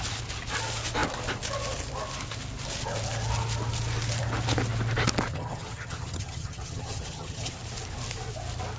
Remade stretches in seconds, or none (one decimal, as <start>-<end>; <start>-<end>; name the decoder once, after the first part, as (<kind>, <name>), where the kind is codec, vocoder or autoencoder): 5.3-7.5 (vocoder, HiFi-GAN)